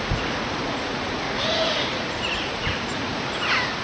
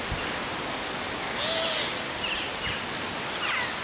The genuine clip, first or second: second